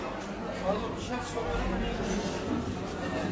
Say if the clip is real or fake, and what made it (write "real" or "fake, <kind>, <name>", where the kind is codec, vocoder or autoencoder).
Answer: real